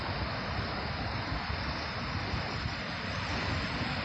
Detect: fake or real real